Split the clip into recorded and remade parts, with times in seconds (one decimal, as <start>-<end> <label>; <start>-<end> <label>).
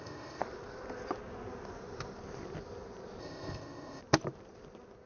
0.0-0.4 remade; 0.4-3.2 recorded; 3.2-4.0 remade; 4.0-5.1 recorded